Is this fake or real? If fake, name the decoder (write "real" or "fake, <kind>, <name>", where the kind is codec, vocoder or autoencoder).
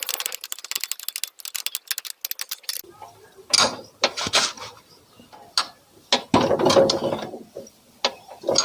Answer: real